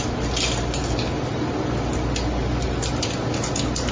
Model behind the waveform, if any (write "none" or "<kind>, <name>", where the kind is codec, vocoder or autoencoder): none